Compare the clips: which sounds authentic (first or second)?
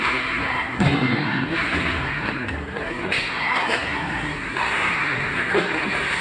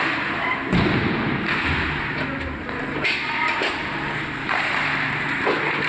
second